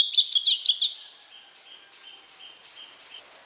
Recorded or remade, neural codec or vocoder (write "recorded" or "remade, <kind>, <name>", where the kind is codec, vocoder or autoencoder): recorded